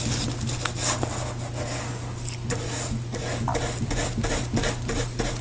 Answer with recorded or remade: recorded